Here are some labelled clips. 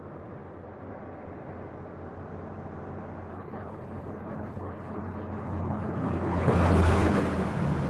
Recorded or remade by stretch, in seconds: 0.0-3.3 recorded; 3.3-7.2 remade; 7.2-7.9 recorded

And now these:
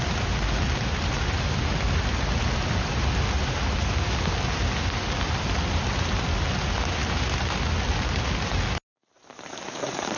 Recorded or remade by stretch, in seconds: 0.0-10.2 recorded

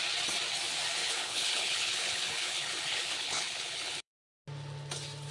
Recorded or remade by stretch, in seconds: 0.0-1.0 recorded; 1.0-4.2 remade; 4.2-5.3 recorded

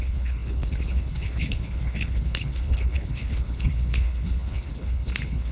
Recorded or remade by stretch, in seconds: 0.0-5.5 remade

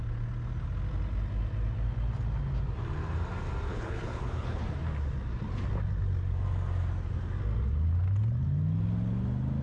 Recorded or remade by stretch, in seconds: 0.0-3.7 recorded; 3.7-4.6 remade; 4.6-9.6 recorded

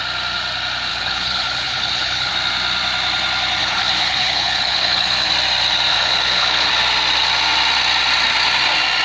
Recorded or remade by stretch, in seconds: 0.0-0.9 recorded; 0.9-2.3 remade; 2.3-3.6 recorded; 3.6-5.3 remade; 5.3-5.9 recorded; 5.9-6.7 remade; 6.7-9.0 recorded

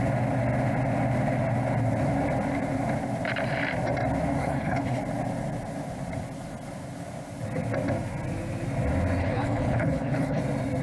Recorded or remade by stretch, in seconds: 0.0-4.4 recorded; 4.4-5.0 remade; 5.0-9.2 recorded; 9.2-10.4 remade; 10.4-10.8 recorded